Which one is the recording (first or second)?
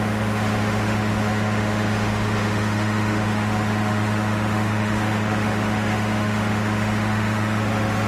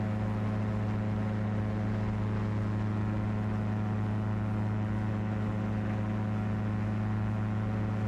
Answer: second